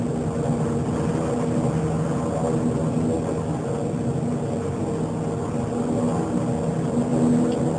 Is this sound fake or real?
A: real